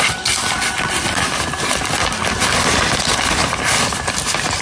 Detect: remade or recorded recorded